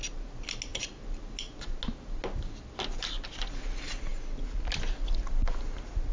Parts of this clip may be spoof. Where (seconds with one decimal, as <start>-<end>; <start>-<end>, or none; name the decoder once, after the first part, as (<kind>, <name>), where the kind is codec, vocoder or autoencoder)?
none